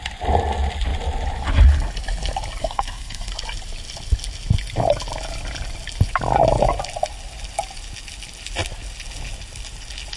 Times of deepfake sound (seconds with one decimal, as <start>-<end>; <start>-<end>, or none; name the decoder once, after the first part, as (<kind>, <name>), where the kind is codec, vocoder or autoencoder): 2.6-3.3 (codec, SNAC)